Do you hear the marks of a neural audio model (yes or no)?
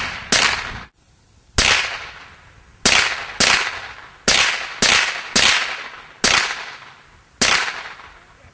no